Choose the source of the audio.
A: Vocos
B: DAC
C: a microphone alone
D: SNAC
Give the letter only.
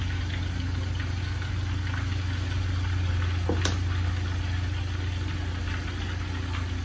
C